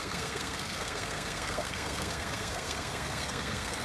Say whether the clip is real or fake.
fake